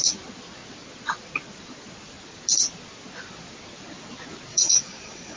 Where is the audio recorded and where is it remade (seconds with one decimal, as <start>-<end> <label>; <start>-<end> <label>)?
0.0-4.5 recorded; 4.5-5.4 remade